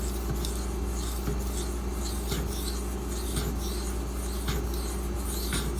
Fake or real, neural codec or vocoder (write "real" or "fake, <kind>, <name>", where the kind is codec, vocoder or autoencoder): real